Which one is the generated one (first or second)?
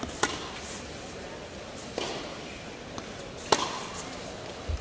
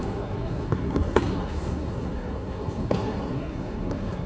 second